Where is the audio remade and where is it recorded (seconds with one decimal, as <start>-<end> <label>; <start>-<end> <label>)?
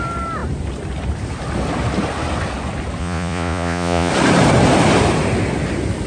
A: 0.0-3.0 recorded; 3.0-4.1 remade; 4.1-6.1 recorded